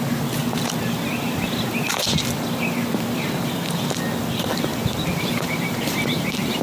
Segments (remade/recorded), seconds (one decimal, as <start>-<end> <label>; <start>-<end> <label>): 0.0-4.7 recorded; 4.7-6.6 remade